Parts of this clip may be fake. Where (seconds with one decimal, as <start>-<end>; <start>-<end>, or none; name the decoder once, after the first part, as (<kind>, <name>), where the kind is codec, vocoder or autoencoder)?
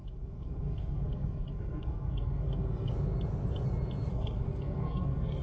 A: 0.0-2.9 (codec, SNAC); 4.1-5.4